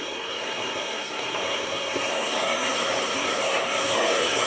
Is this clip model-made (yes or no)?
yes